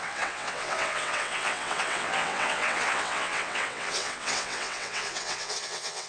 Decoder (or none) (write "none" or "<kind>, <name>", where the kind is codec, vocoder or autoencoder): vocoder, WaveNeXt